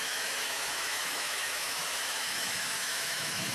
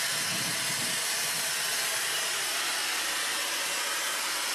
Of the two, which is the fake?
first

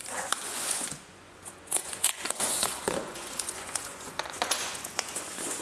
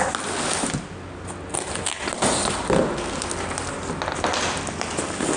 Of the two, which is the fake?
first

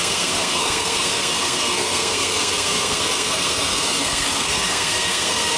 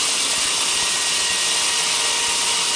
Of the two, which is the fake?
first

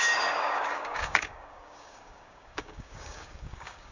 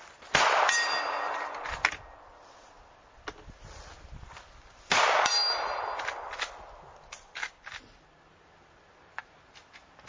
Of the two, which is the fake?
first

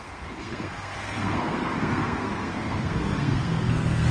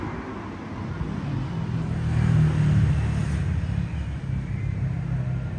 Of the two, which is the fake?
first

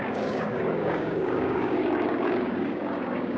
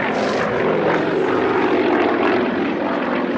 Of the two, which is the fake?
first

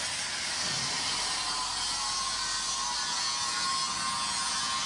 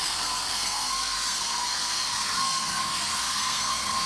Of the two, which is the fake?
second